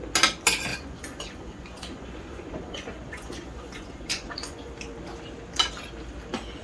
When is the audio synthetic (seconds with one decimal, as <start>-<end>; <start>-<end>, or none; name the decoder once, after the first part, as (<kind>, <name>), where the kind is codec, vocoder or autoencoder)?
0.7-4.7 (vocoder, Vocos)